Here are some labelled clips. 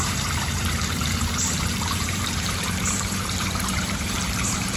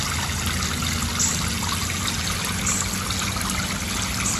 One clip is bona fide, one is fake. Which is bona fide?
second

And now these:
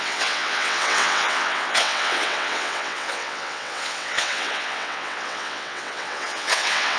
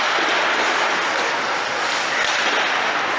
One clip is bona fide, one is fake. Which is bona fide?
second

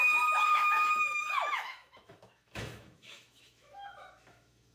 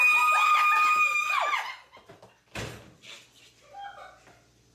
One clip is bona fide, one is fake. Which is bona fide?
second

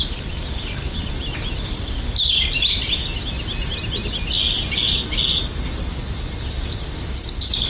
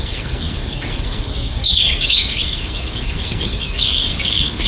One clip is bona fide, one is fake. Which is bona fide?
first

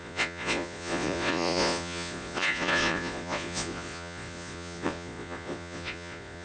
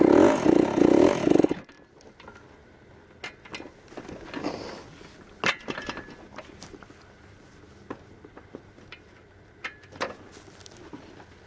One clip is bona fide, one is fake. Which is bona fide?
second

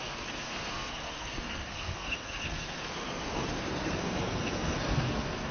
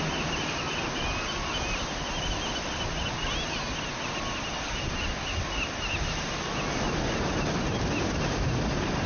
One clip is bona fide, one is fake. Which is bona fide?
second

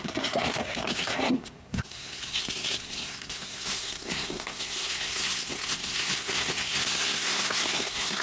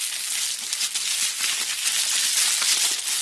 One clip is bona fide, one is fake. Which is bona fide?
second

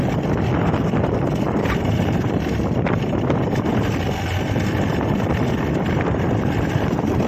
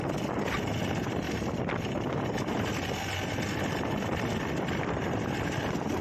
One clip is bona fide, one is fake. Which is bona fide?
second